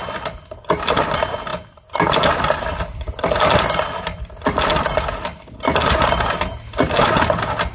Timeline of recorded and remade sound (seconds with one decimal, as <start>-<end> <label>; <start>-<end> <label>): 0.0-7.7 recorded